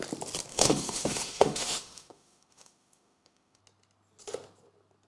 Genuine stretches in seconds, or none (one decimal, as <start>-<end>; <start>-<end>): 0.0-0.5; 3.6-5.1